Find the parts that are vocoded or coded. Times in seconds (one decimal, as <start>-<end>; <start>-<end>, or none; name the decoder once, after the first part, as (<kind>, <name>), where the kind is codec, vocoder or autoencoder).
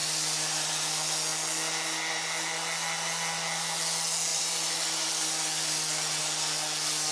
0.0-0.7 (vocoder, BigVGAN v2); 4.3-6.2